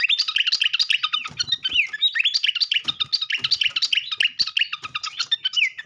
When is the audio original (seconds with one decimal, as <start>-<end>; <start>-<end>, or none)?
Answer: 0.0-5.9